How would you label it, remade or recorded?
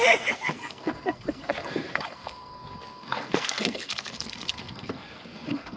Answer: remade